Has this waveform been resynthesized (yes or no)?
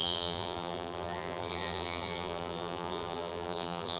yes